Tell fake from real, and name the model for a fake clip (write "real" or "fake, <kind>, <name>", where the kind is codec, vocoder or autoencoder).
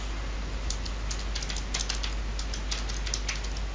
real